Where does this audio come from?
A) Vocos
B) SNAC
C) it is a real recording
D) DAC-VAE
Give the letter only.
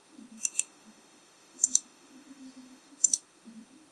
D